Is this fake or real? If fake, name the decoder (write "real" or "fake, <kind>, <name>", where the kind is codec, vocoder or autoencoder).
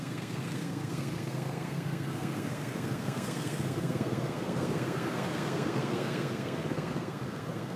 fake, codec, SNAC